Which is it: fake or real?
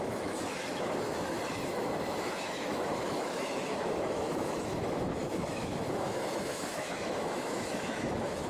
fake